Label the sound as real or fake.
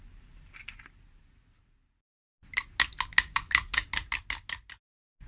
real